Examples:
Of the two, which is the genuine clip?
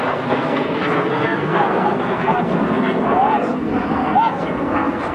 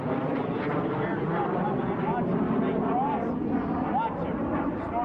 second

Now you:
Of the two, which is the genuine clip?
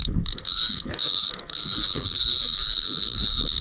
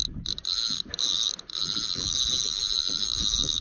second